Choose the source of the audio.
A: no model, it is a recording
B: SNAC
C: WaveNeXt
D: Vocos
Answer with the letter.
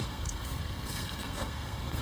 B